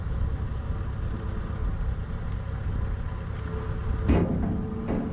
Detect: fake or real real